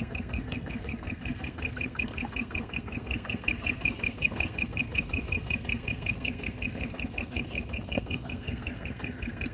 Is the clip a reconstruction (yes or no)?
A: yes